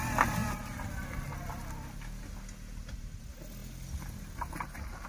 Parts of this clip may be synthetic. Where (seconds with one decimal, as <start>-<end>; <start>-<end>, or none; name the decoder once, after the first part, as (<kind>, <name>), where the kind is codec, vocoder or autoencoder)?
none